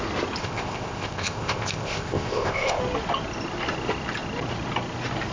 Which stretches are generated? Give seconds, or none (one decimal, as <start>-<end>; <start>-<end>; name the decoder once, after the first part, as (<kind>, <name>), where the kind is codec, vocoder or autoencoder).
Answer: 0.4-2.8 (codec, ZipCodec)